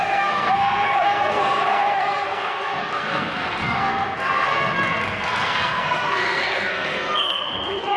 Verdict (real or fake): fake